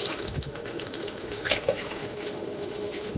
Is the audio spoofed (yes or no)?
yes